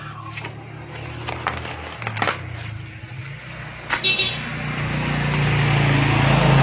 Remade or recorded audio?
recorded